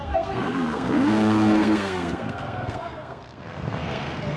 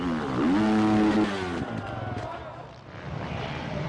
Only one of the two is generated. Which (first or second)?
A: first